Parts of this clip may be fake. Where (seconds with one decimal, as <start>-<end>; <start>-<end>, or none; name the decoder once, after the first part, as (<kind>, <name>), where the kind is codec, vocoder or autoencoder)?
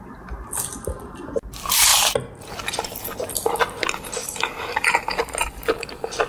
4.2-4.9 (vocoder, BigVGAN v2)